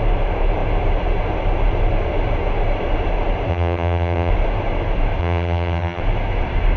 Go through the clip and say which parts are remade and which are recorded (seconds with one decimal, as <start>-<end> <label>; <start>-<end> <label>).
0.0-3.5 recorded; 3.5-4.3 remade; 4.3-5.2 recorded; 5.2-6.0 remade; 6.0-6.8 recorded